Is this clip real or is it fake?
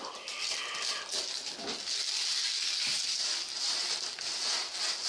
real